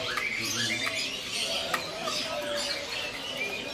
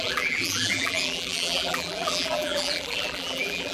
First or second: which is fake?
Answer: second